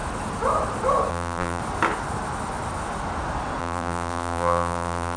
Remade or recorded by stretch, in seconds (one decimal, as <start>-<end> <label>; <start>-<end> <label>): 0.0-1.1 recorded; 1.1-1.6 remade; 1.6-3.6 recorded; 3.6-5.2 remade